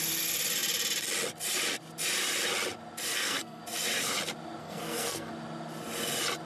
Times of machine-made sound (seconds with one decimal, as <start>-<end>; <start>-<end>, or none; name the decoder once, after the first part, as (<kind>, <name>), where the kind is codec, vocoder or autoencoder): 3.1-3.6 (codec, SNAC); 4.6-5.3